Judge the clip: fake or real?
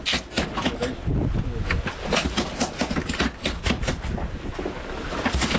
real